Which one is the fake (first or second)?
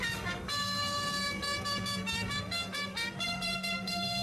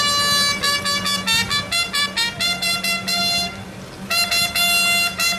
first